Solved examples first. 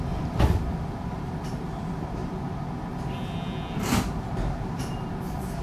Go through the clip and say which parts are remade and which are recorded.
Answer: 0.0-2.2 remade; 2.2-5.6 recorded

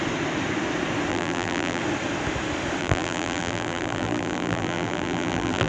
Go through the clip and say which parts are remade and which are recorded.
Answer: 0.0-1.1 recorded; 1.1-1.8 remade; 1.8-2.8 recorded; 2.8-5.7 remade

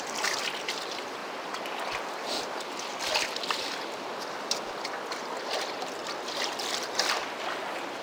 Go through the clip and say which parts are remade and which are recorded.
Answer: 0.0-1.2 recorded; 1.2-5.9 remade; 5.9-8.0 recorded

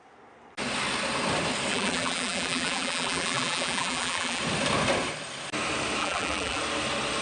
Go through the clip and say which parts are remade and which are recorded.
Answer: 0.0-1.7 recorded; 1.7-4.4 remade; 4.4-6.0 recorded; 6.0-6.6 remade; 6.6-7.2 recorded

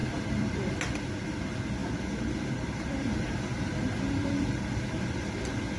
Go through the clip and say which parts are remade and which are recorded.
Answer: 0.0-1.4 remade; 1.4-1.8 recorded; 1.8-5.3 remade; 5.3-5.8 recorded

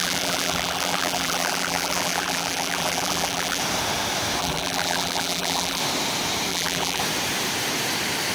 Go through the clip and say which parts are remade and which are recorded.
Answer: 0.0-3.6 remade; 3.6-4.4 recorded; 4.4-5.8 remade; 5.8-6.5 recorded; 6.5-7.0 remade; 7.0-8.3 recorded